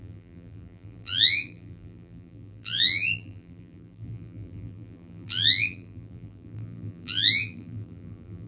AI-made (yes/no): yes